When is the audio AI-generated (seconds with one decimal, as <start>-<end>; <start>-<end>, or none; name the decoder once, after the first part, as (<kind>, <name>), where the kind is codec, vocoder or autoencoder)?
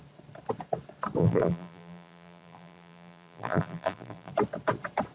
1.2-4.3 (vocoder, BigVGAN v2)